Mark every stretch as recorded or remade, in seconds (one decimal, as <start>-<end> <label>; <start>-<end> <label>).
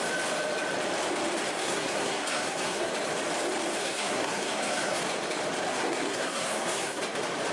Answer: 0.0-1.6 recorded; 1.6-2.9 remade; 2.9-3.8 recorded; 3.8-5.0 remade; 5.0-5.7 recorded; 5.7-7.0 remade; 7.0-7.5 recorded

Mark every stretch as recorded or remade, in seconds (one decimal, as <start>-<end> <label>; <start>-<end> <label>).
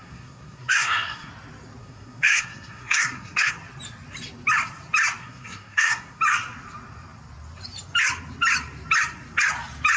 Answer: 0.0-1.3 remade; 1.3-1.8 recorded; 1.8-3.5 remade; 3.5-5.2 recorded; 5.2-6.2 remade; 6.2-10.0 recorded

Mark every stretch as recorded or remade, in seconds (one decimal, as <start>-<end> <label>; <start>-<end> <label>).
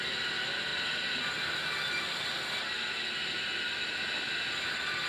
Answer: 0.0-5.1 recorded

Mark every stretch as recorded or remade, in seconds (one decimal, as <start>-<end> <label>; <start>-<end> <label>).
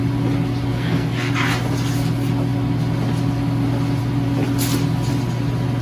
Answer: 0.0-0.7 recorded; 0.7-1.3 remade; 1.3-5.8 recorded